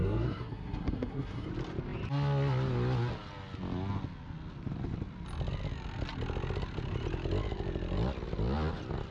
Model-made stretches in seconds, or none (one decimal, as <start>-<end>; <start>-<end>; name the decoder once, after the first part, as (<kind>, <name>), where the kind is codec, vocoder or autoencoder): 0.0-1.5 (codec, SNAC)